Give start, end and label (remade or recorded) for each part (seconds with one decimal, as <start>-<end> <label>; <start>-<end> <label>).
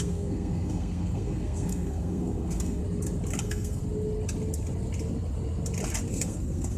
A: 0.0-2.8 remade; 2.8-3.4 recorded; 3.4-3.8 remade; 3.8-6.1 recorded; 6.1-6.8 remade